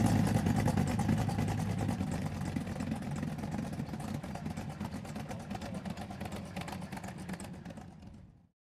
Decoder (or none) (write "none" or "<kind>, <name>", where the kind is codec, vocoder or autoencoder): vocoder, BigVGAN v2